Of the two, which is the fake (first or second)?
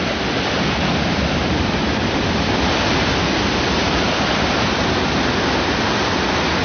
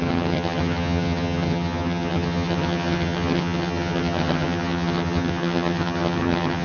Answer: second